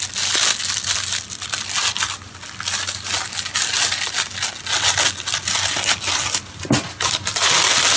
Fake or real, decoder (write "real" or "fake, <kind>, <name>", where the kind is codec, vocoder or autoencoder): real